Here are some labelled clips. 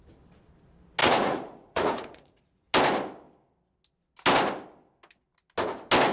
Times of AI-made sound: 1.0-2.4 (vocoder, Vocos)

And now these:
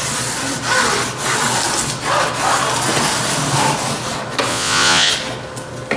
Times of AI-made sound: 4.5-5.1 (vocoder, Vocos)

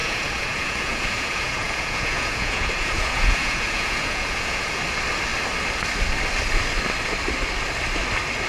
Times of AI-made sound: 0.0-4.8 (vocoder, Vocos)

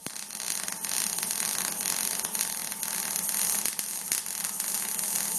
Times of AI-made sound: none

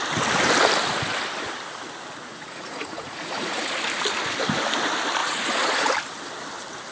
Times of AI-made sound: 2.3-3.7 (vocoder, Vocos); 5.2-5.9

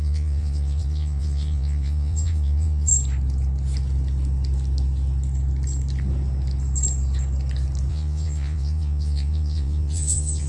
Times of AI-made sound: 0.0-2.9 (vocoder, Vocos); 7.9-10.5